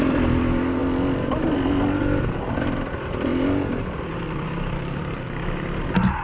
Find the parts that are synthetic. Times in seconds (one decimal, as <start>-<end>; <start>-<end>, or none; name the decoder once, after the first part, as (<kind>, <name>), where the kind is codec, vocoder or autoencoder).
0.0-0.8 (vocoder, BigVGAN v2); 2.4-3.3; 4.0-6.2